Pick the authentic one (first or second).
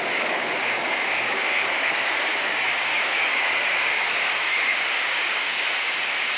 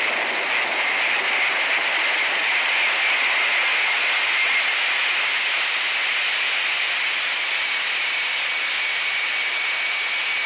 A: second